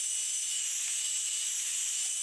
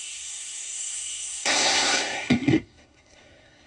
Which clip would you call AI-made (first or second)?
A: second